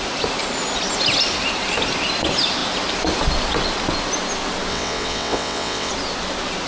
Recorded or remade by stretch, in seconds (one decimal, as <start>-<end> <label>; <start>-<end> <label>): 0.0-4.7 recorded; 4.7-5.9 remade; 5.9-6.7 recorded